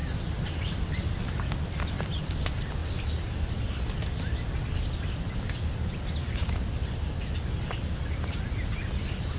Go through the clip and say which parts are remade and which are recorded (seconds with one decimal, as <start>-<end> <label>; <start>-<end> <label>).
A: 0.0-9.4 recorded